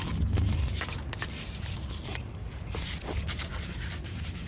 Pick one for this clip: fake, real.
real